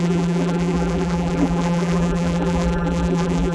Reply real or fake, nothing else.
fake